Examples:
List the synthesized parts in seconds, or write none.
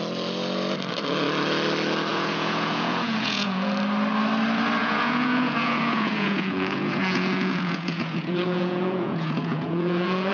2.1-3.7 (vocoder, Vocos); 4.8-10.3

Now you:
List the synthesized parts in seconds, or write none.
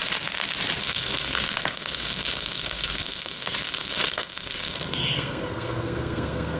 0.8-6.6 (codec, SNAC)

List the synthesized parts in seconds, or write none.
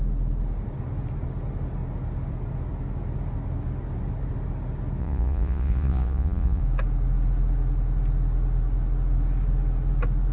5.0-6.6 (vocoder, Vocos)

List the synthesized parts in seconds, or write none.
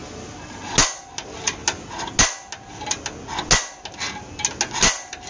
none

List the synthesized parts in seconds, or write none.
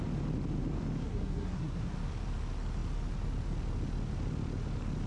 1.0-1.9 (codec, SNAC)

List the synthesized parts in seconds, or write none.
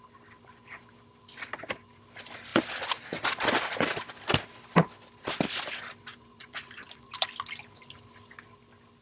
6.1-7.1 (vocoder, Vocos)